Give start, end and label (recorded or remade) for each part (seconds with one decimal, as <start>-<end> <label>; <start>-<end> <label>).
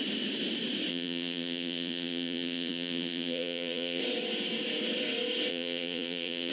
0.0-0.9 recorded; 0.9-4.0 remade; 4.0-5.5 recorded; 5.5-6.5 remade